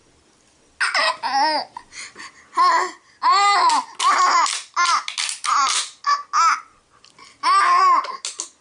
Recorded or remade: recorded